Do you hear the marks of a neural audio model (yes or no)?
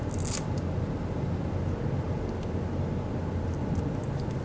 no